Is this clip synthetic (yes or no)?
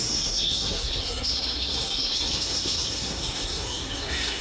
yes